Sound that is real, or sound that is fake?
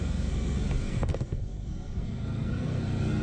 fake